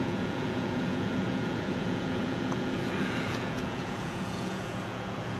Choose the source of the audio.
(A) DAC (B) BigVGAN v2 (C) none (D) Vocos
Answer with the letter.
D